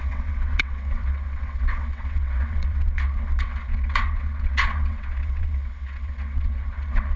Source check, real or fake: fake